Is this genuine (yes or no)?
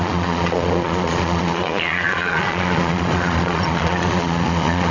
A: no